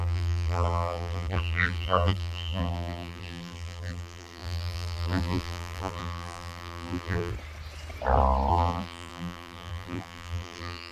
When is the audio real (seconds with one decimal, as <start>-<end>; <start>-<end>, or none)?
7.3-8.5